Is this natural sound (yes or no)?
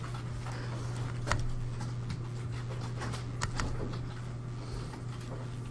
yes